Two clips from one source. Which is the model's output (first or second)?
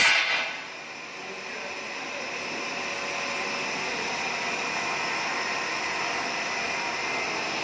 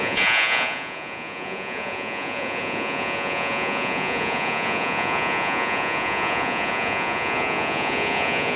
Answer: second